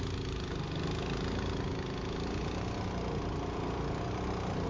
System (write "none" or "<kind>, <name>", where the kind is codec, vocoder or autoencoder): none